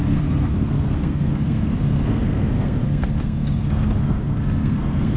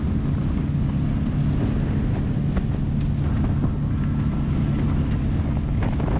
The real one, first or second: second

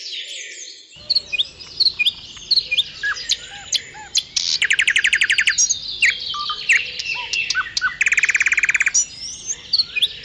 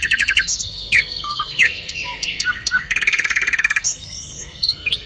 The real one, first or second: first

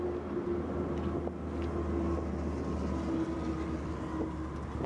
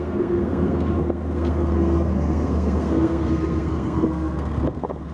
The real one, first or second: first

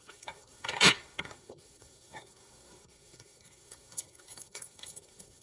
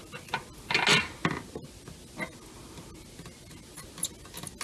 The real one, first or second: second